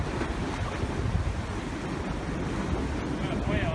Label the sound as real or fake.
real